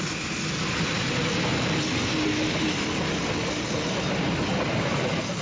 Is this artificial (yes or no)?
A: no